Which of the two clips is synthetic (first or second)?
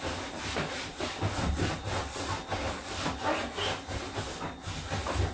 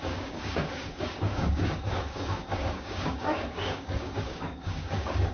second